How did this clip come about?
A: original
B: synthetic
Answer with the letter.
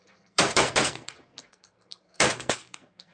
B